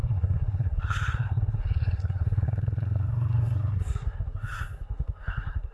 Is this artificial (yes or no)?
yes